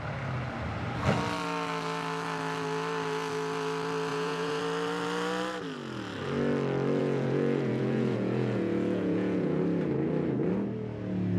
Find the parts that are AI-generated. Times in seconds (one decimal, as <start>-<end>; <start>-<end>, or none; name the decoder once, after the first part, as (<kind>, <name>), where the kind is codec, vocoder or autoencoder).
4.1-4.6 (vocoder, Vocos); 7.0-9.6